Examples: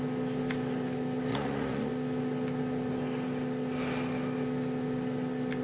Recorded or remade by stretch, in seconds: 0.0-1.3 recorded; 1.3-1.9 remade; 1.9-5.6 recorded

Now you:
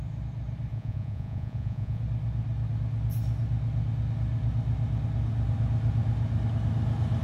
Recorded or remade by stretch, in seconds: 0.0-0.7 recorded; 0.7-2.0 remade; 2.0-7.2 recorded

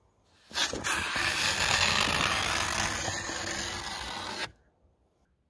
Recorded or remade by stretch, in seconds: 0.0-5.5 recorded

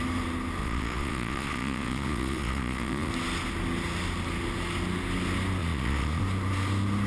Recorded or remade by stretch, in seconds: 0.0-0.6 recorded; 0.6-3.1 remade; 3.1-5.6 recorded; 5.6-6.2 remade; 6.2-7.1 recorded

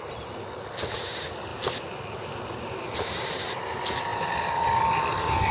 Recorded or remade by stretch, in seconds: 0.0-5.5 recorded

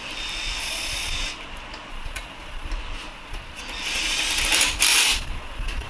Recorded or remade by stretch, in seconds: 0.0-0.6 recorded; 0.6-1.1 remade; 1.1-1.9 recorded; 1.9-2.7 remade; 2.7-3.1 recorded; 3.1-3.6 remade; 3.6-4.9 recorded; 4.9-5.9 remade

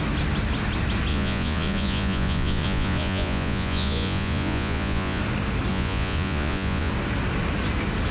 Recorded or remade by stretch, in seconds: 0.0-1.1 recorded; 1.1-5.2 remade; 5.2-5.7 recorded; 5.7-6.9 remade; 6.9-8.1 recorded

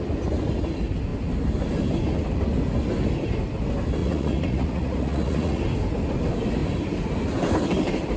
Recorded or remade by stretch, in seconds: 0.0-4.0 recorded; 4.0-5.6 remade; 5.6-8.2 recorded